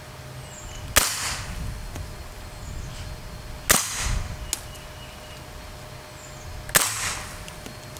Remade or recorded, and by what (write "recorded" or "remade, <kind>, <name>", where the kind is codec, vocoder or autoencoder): recorded